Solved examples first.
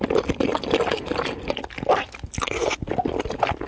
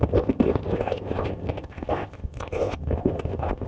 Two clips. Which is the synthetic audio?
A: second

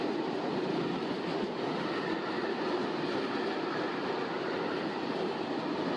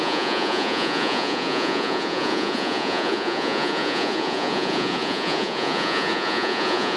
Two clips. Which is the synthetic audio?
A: second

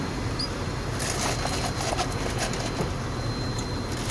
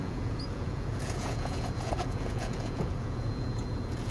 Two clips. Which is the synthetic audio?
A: second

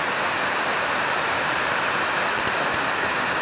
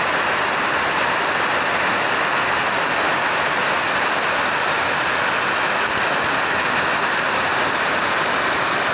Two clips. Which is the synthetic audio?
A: first